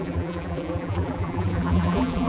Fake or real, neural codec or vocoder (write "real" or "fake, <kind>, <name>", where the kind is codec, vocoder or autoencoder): fake, vocoder, BigVGAN v2